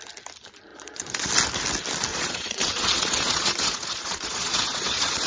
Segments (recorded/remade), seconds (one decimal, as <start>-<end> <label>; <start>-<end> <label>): 0.0-0.7 recorded; 0.7-1.3 remade; 1.3-2.1 recorded; 2.1-5.3 remade